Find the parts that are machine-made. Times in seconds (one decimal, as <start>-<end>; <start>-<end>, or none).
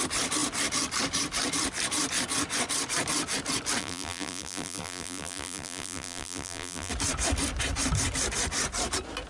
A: 3.8-6.9